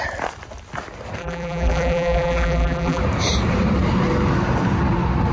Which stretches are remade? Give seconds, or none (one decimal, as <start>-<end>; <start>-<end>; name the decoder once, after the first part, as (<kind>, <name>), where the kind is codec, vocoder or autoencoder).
1.2-3.0 (vocoder, BigVGAN v2)